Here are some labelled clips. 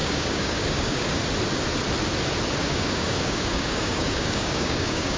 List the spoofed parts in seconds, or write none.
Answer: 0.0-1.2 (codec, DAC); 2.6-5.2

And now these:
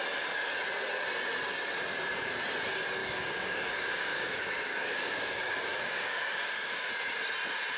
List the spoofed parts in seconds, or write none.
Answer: 3.0-6.9 (codec, DAC)

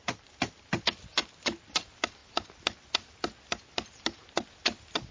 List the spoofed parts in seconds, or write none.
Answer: none

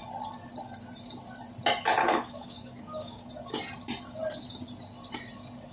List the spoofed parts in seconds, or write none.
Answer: 2.0-3.3 (codec, DAC)

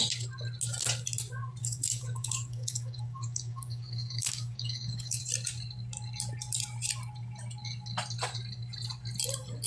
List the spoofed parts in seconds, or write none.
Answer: 1.6-5.2 (codec, DAC)